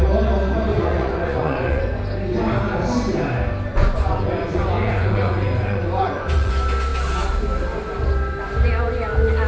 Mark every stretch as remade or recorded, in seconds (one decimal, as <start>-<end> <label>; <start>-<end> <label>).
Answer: 0.0-0.7 recorded; 0.7-2.0 remade; 2.0-3.8 recorded; 3.8-6.5 remade; 6.5-9.5 recorded